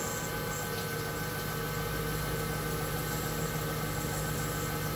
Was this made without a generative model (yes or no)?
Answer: yes